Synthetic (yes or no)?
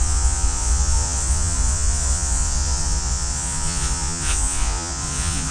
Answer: yes